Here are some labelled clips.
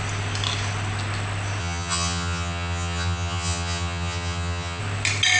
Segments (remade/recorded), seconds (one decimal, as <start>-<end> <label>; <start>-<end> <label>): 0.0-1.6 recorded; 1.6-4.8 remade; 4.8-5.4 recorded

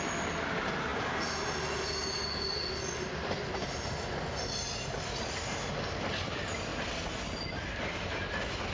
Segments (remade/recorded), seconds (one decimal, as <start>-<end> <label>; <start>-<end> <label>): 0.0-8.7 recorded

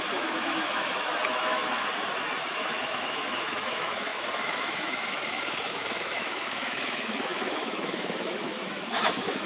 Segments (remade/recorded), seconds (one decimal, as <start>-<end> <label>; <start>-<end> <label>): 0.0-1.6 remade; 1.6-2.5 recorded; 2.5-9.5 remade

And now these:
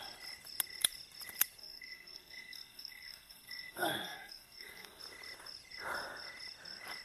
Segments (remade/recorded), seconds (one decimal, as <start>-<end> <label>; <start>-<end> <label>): 0.0-1.6 recorded; 1.6-5.0 remade; 5.0-7.0 recorded

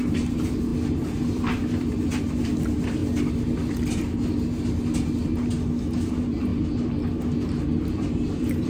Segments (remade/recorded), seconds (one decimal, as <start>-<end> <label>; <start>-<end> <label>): 0.0-3.0 remade; 3.0-6.1 recorded; 6.1-6.5 remade; 6.5-7.8 recorded; 7.8-8.7 remade

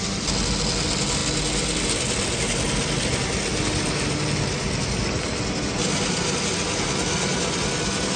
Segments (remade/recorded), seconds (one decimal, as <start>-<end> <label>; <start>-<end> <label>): 0.0-8.2 recorded